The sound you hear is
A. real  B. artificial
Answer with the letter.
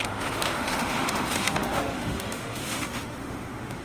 B